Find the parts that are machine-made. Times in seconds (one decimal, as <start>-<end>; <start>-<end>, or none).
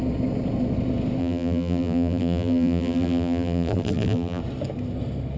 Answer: 1.2-4.4